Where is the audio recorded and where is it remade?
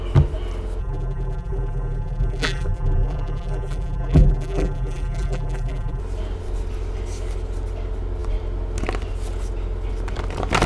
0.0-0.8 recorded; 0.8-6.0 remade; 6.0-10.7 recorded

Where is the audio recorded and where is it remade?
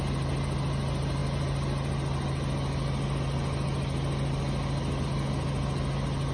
0.0-6.3 recorded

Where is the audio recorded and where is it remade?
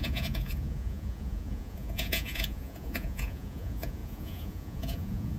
0.0-5.4 remade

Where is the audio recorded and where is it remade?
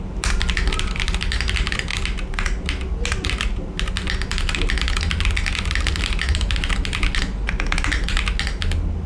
0.0-9.1 recorded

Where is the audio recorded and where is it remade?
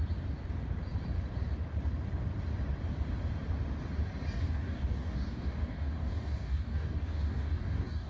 0.0-4.4 recorded; 4.4-8.1 remade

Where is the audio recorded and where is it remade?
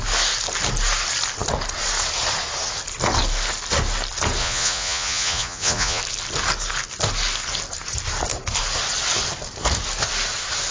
0.0-4.4 recorded; 4.4-6.0 remade; 6.0-10.7 recorded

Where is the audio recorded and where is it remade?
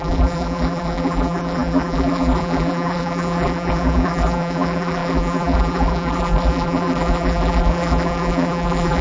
0.0-9.0 remade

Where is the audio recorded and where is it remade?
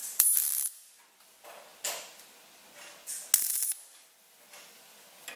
0.0-5.4 recorded